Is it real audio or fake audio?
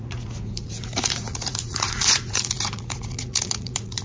fake